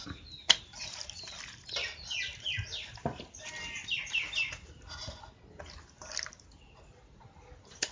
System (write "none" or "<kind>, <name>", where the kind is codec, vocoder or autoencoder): none